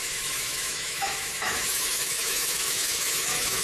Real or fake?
fake